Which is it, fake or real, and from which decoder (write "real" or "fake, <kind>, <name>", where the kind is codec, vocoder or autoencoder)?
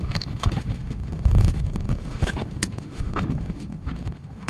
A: fake, autoencoder, DAC-VAE